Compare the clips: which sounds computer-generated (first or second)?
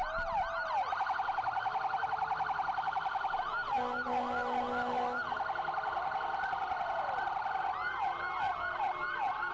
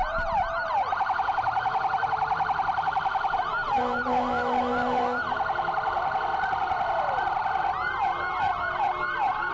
second